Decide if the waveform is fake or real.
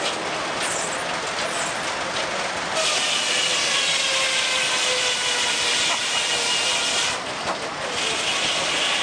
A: real